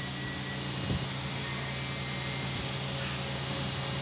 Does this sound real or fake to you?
real